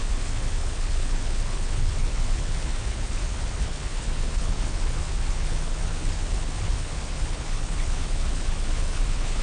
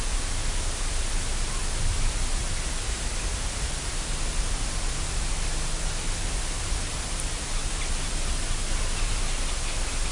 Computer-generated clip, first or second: first